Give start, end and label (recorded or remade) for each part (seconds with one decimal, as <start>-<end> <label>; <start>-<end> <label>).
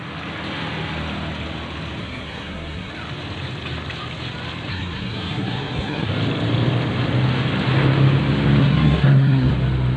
0.0-2.0 recorded; 2.0-2.9 remade; 2.9-4.7 recorded; 4.7-6.1 remade; 6.1-8.6 recorded; 8.6-9.5 remade; 9.5-10.0 recorded